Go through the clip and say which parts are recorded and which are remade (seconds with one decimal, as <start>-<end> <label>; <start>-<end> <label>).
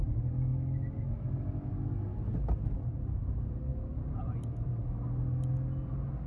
0.0-6.3 recorded